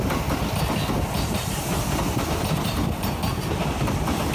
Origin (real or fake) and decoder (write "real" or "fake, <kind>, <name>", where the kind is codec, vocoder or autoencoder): real